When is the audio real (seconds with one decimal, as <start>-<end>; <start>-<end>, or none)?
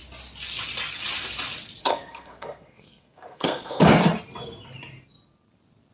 0.0-1.8; 3.8-5.9